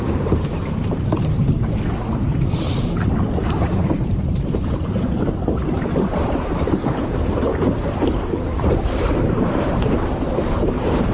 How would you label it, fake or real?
fake